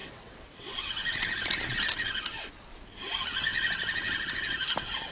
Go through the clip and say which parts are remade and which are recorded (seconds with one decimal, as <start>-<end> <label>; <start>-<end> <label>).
0.0-0.9 remade; 0.9-5.1 recorded